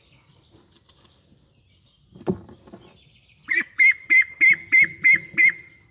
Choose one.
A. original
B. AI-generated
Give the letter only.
A